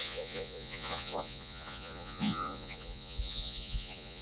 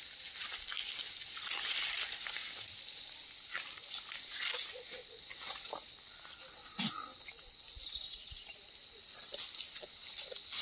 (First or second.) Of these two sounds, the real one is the second